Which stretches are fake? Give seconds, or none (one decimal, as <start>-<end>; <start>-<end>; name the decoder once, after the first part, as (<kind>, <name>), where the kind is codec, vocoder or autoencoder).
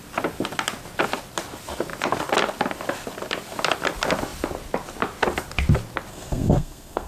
6.1-7.1 (codec, SNAC)